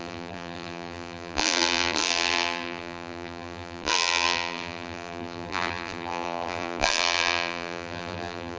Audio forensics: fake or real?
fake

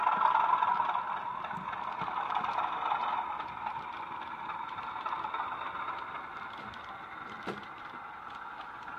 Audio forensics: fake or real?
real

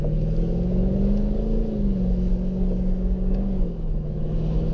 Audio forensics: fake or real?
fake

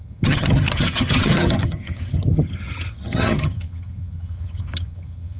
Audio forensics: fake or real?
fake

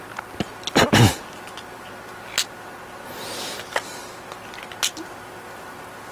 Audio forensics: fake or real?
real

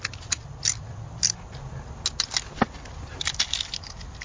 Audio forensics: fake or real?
real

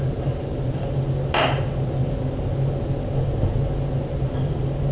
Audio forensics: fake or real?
real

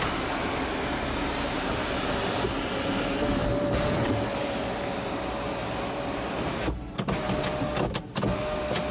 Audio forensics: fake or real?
real